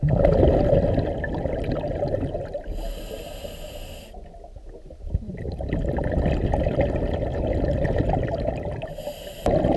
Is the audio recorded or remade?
recorded